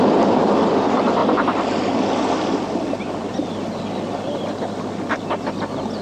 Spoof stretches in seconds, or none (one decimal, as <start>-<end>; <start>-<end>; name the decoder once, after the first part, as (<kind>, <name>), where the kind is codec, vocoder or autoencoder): 1.2-4.6 (vocoder, BigVGAN v2)